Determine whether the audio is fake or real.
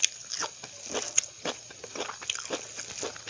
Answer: real